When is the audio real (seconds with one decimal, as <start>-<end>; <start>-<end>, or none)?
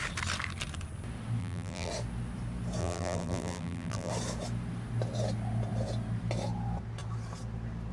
0.0-1.4; 1.9-2.8; 4.1-7.9